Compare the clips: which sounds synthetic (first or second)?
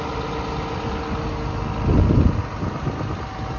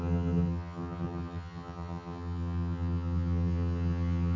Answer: second